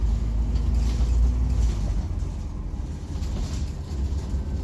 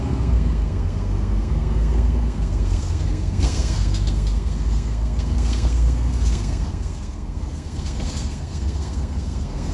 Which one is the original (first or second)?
first